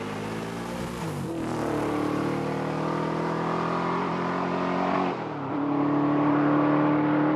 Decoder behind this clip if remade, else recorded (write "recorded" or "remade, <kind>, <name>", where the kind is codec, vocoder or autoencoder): recorded